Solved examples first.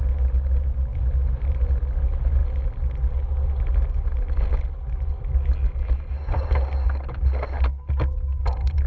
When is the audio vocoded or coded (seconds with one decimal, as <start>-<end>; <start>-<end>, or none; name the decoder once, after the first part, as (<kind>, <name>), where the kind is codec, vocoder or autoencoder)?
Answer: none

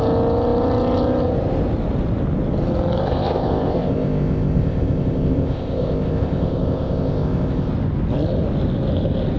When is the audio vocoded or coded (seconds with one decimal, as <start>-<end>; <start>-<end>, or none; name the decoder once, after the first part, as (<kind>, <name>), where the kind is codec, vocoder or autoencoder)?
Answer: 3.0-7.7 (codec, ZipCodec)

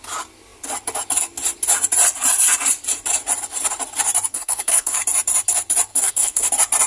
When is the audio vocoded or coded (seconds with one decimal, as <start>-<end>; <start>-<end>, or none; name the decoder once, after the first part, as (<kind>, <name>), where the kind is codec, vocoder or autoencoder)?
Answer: 4.3-5.0 (codec, SNAC); 5.9-6.5

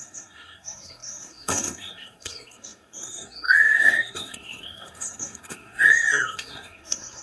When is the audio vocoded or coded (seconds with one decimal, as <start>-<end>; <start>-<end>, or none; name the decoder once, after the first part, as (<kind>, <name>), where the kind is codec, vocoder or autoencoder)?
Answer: 0.0-7.2 (codec, SNAC)